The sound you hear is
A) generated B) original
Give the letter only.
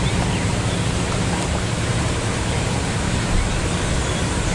A